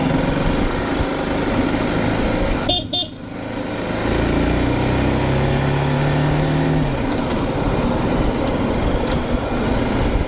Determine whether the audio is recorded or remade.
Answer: recorded